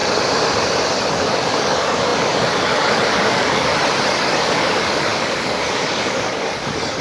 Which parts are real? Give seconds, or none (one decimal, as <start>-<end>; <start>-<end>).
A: 0.0-1.1; 3.7-4.2